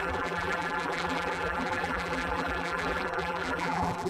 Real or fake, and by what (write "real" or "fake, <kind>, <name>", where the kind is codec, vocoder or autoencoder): fake, vocoder, BigVGAN v2